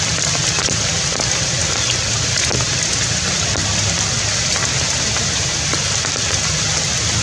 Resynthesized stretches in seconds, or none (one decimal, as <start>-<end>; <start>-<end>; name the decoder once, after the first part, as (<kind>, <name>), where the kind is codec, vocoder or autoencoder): none